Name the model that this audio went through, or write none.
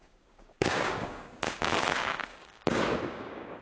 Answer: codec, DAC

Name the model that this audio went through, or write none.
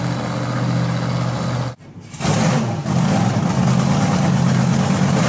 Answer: none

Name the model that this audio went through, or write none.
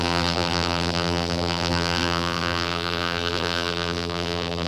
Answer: vocoder, BigVGAN v2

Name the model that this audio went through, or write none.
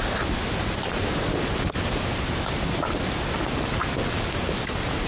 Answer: none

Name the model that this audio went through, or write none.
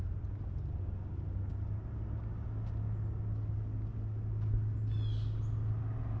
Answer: none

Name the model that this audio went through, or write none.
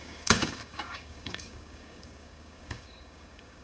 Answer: codec, DAC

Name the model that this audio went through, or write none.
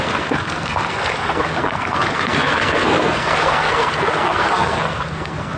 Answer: codec, SNAC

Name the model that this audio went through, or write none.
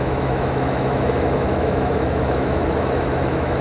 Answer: autoencoder, DAC-VAE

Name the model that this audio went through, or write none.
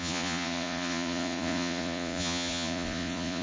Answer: vocoder, Vocos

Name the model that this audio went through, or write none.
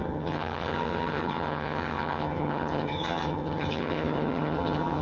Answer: vocoder, HiFi-GAN